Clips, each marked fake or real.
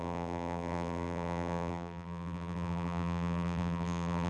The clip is fake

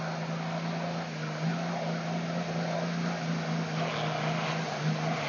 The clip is real